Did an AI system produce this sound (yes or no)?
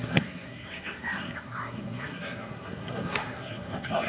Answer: yes